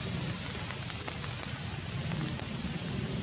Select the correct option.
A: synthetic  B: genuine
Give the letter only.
B